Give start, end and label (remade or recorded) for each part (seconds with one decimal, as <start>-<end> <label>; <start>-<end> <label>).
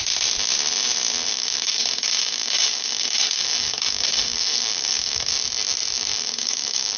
0.0-1.3 recorded; 1.3-5.3 remade; 5.3-6.1 recorded; 6.1-7.0 remade